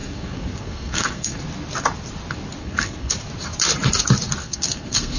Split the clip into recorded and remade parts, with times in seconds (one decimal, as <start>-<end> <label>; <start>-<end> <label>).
0.0-1.4 remade; 1.4-2.6 recorded; 2.6-3.1 remade; 3.1-4.4 recorded; 4.4-5.2 remade